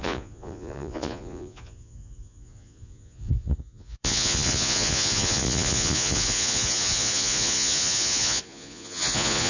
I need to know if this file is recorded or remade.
remade